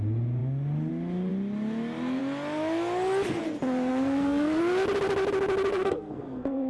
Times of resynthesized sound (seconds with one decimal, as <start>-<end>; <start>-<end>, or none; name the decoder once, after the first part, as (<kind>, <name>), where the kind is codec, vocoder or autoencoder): 3.9-4.6 (codec, SNAC); 5.7-6.7

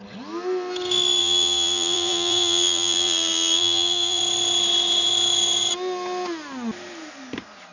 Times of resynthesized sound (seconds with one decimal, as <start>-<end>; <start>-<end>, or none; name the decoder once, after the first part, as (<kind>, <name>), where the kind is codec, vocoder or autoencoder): 1.2-4.2 (vocoder, BigVGAN v2)